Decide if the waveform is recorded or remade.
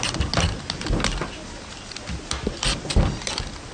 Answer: recorded